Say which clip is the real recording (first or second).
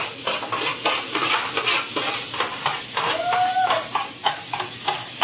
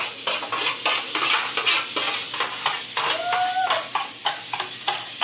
second